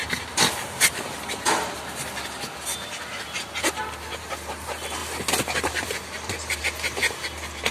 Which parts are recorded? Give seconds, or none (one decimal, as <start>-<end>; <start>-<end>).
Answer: 0.0-7.7